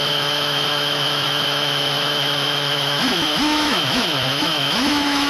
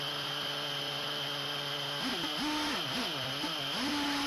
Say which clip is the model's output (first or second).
first